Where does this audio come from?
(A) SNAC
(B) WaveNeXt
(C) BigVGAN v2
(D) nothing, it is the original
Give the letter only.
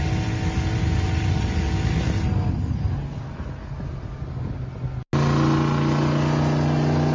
D